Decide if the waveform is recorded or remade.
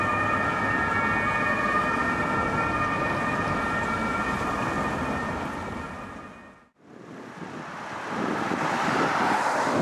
recorded